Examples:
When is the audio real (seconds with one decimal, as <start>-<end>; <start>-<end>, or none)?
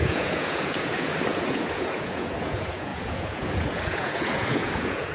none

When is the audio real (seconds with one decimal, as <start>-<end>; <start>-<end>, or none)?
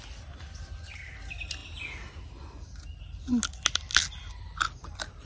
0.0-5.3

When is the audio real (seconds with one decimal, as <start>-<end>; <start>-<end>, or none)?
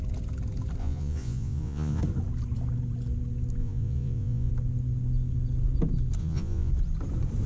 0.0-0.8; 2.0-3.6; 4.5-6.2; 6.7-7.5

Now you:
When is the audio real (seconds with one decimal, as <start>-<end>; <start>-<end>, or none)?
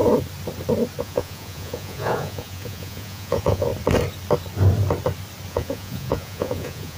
0.0-1.0; 3.7-5.5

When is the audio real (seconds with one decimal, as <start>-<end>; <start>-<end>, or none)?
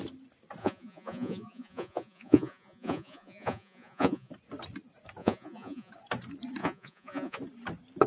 0.0-0.6; 4.3-5.2; 5.9-6.6; 7.4-8.1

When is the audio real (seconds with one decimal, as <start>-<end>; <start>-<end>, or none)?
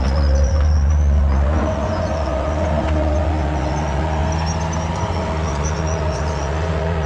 4.2-4.9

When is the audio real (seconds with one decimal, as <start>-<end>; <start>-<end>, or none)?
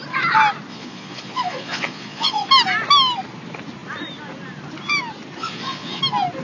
0.0-0.7; 2.5-5.4; 6.0-6.4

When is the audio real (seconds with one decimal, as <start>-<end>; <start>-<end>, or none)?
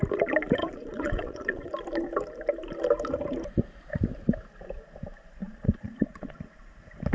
0.0-0.6; 1.7-5.4; 6.3-7.1